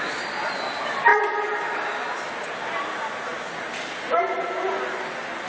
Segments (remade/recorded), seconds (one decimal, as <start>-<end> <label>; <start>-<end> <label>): 0.0-5.5 recorded